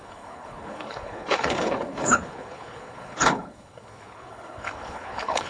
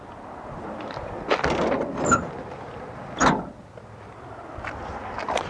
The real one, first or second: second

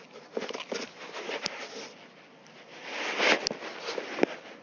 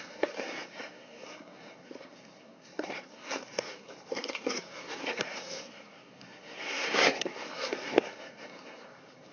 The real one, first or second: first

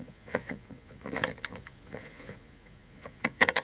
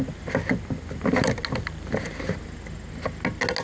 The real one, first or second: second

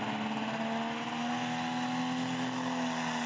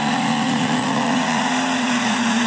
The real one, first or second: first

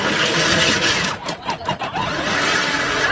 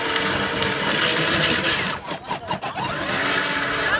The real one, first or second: second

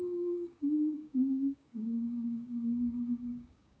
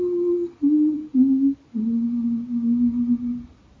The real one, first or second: second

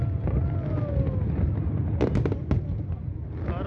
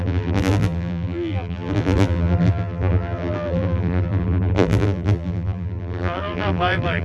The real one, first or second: first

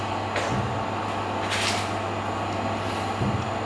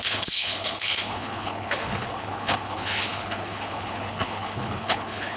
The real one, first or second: first